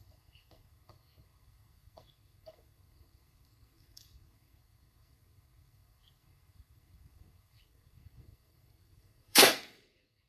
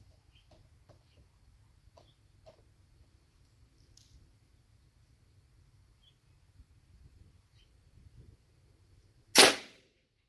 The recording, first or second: second